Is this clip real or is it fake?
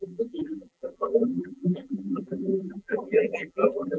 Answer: fake